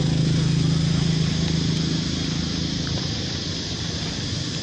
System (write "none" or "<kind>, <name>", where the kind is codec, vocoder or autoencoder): none